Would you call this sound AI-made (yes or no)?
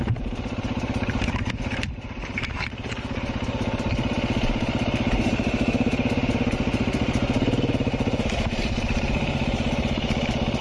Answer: yes